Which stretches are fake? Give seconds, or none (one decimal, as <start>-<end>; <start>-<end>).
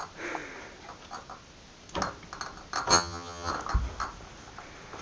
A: 2.9-3.5